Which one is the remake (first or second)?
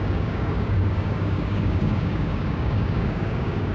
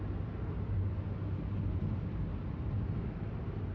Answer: first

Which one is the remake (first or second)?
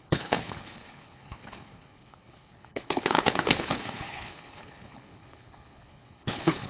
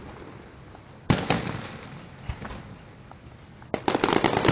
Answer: first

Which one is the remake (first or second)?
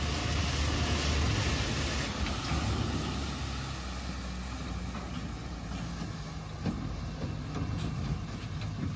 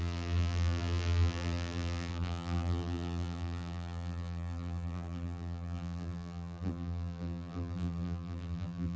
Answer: second